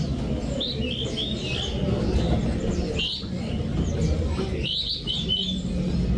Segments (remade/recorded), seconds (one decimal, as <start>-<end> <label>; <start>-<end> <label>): 0.0-6.2 recorded